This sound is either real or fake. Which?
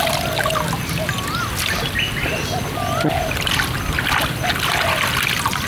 real